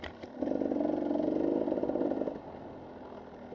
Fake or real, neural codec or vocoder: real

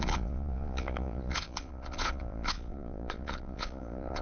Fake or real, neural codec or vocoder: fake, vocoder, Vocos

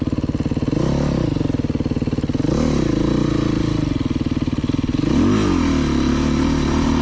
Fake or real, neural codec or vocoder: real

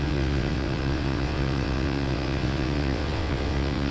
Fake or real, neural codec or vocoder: fake, vocoder, WaveNeXt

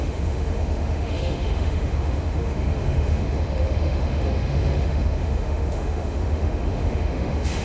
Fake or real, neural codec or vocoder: fake, autoencoder, DAC-VAE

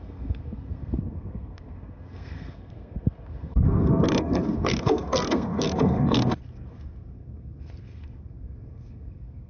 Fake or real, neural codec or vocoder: fake, codec, SNAC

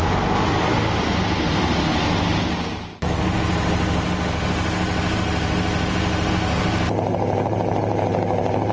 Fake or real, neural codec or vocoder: real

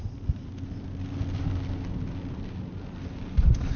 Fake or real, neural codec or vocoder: real